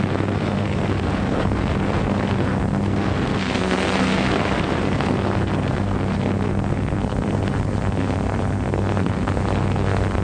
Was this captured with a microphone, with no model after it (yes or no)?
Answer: no